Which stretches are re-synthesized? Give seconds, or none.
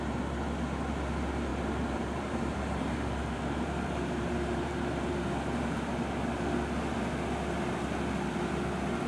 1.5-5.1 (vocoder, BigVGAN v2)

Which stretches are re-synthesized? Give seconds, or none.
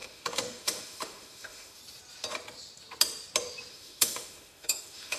0.0-1.8 (autoencoder, DAC-VAE); 3.7-5.2